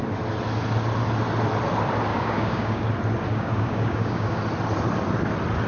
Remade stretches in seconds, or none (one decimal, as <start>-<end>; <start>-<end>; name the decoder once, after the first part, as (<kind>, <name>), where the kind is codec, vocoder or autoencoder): 2.1-2.9 (codec, DAC); 3.3-4.4